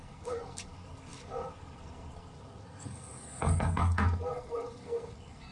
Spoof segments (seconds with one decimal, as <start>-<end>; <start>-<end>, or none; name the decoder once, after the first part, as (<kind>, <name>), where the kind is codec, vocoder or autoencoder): 0.0-5.5 (codec, SNAC)